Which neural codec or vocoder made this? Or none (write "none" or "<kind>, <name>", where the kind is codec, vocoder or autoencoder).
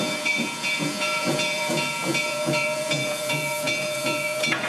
vocoder, Vocos